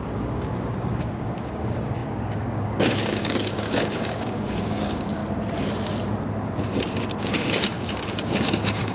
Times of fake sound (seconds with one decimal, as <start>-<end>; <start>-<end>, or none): 0.0-5.2; 7.2-8.9